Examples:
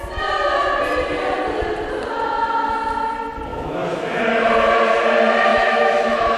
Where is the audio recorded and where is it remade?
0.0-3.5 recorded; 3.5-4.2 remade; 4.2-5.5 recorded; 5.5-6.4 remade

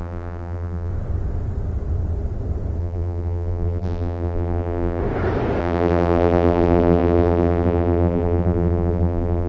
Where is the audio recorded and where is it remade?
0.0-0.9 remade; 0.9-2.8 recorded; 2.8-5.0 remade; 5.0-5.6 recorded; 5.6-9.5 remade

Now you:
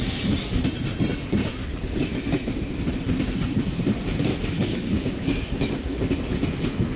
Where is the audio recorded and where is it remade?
0.0-1.4 recorded; 1.4-2.0 remade; 2.0-4.3 recorded; 4.3-6.0 remade; 6.0-7.0 recorded

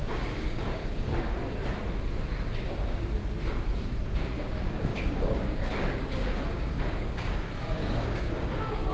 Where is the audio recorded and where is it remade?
0.0-1.1 remade; 1.1-2.6 recorded; 2.6-3.2 remade; 3.2-4.0 recorded; 4.0-8.9 remade